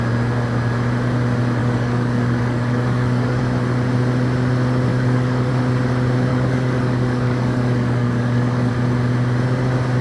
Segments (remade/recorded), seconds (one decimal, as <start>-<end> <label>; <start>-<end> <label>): 0.0-1.6 recorded; 1.6-3.4 remade; 3.4-4.9 recorded; 4.9-5.5 remade; 5.5-6.3 recorded; 6.3-8.7 remade; 8.7-10.0 recorded